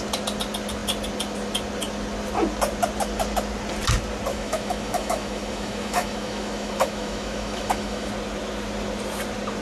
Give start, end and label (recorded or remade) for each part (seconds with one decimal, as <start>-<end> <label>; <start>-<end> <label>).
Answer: 0.0-4.3 recorded; 4.3-8.1 remade; 8.1-9.6 recorded